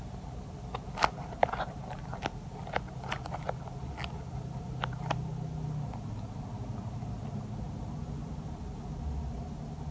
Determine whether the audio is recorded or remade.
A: recorded